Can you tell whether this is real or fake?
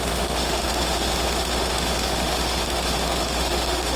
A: fake